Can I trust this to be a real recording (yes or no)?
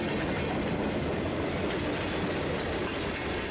yes